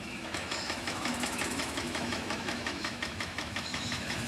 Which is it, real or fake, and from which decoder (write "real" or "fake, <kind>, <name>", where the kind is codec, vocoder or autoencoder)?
fake, autoencoder, DAC-VAE